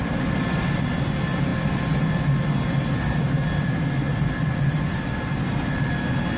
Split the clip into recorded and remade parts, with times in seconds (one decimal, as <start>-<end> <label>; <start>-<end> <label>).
0.0-6.4 recorded